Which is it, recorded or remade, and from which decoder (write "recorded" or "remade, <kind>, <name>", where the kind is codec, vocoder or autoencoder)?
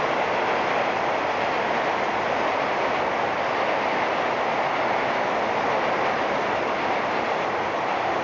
recorded